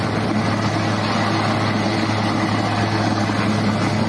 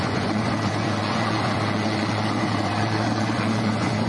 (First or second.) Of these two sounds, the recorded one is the first